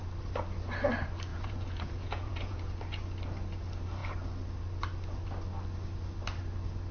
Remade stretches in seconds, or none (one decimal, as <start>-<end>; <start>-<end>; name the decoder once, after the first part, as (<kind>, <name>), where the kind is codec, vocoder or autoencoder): 1.3-2.7 (vocoder, Vocos)